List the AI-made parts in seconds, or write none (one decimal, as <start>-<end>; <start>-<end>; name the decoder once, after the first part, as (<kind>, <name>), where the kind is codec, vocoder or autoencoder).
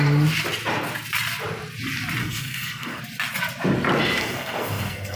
2.2-3.0 (codec, SNAC); 4.2-5.2